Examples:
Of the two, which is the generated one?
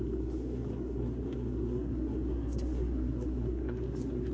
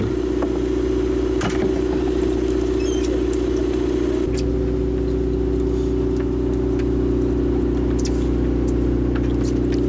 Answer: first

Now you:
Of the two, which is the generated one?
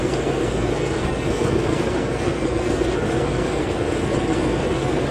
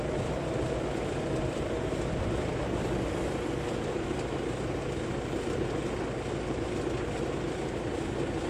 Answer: first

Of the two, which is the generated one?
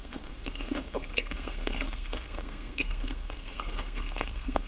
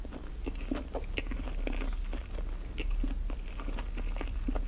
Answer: first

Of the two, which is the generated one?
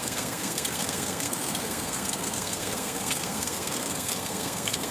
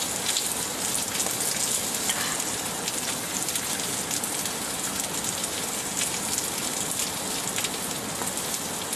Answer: first